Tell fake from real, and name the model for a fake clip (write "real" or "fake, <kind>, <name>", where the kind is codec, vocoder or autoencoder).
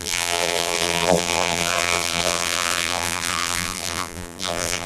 fake, vocoder, BigVGAN v2